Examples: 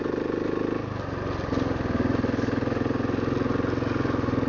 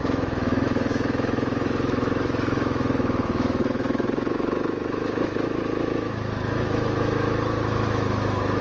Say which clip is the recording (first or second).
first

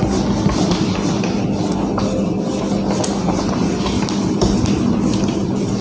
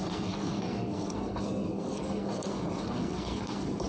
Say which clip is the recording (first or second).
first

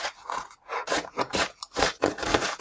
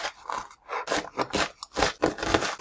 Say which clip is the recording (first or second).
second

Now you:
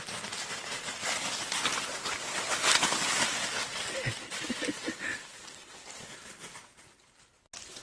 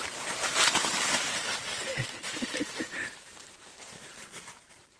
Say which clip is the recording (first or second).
first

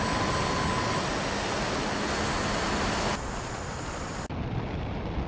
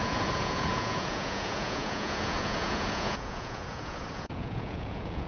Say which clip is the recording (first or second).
first